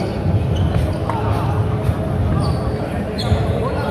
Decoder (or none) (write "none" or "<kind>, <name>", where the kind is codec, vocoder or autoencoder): none